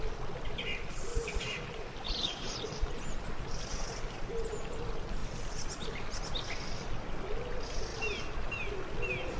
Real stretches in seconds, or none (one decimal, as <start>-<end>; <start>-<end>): 0.0-1.1; 2.9-3.7; 4.2-9.4